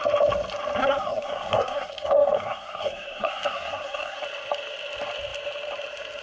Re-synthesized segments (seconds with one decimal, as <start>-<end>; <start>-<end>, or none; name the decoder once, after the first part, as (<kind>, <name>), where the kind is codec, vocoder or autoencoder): 0.8-4.2 (codec, SNAC)

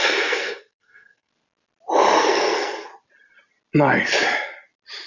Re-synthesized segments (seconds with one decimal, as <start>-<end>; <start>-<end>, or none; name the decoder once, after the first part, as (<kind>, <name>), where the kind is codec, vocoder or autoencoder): 0.0-1.3 (codec, SNAC); 2.2-2.9